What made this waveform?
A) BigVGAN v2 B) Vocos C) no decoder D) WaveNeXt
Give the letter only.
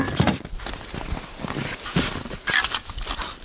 C